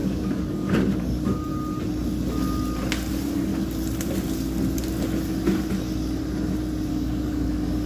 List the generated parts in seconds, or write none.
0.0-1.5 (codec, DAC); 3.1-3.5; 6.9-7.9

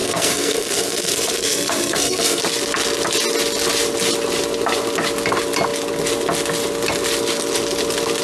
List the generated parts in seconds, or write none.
0.0-2.4 (codec, SNAC)